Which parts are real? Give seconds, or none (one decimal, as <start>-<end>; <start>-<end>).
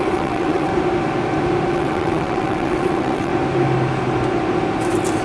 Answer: 0.7-1.7; 3.3-5.2